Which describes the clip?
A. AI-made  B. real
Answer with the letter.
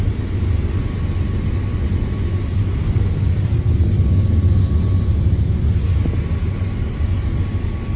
B